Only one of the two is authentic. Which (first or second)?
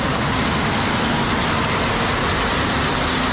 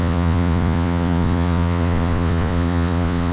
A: first